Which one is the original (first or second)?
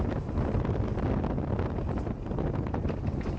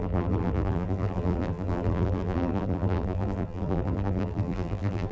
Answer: first